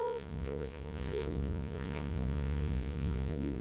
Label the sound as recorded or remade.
remade